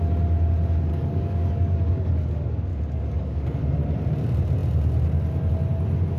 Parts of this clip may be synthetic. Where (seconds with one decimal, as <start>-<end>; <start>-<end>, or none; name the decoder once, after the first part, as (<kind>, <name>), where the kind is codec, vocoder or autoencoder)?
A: 0.9-2.1 (codec, DAC); 2.7-3.6

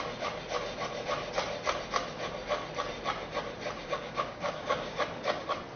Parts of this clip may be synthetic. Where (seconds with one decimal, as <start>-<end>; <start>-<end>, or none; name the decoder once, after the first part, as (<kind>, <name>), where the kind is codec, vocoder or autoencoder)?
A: 3.8-5.0 (codec, DAC)

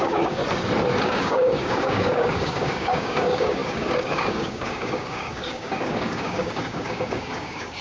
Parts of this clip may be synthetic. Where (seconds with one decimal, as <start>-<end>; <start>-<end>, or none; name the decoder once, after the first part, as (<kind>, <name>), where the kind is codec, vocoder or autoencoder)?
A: 0.0-0.4 (codec, DAC); 1.0-7.8

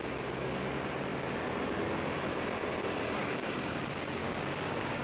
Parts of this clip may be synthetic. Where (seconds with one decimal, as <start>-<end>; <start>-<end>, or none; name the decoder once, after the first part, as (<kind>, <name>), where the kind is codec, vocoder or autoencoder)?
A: 3.2-3.8 (codec, DAC); 4.2-5.0

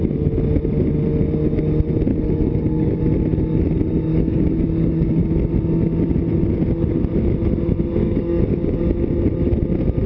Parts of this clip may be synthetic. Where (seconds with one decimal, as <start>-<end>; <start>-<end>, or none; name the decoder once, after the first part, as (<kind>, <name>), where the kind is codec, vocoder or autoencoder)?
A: 2.1-3.0 (codec, DAC); 4.1-5.2; 8.0-8.8

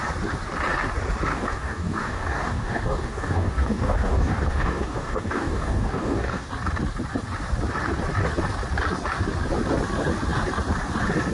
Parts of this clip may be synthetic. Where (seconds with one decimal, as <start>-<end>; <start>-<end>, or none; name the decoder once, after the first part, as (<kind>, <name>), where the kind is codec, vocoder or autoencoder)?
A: 1.3-6.5 (codec, DAC)